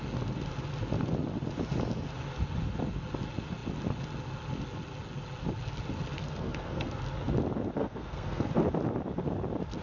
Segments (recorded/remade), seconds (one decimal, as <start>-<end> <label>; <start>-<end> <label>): 0.0-6.2 recorded; 6.2-7.0 remade; 7.0-7.8 recorded; 7.8-8.5 remade; 8.5-9.8 recorded